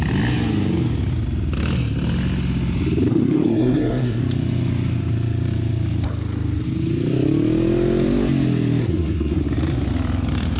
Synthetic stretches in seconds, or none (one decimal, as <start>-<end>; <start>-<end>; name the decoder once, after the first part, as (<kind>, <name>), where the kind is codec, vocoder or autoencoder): 3.1-4.2 (codec, SNAC); 8.8-9.4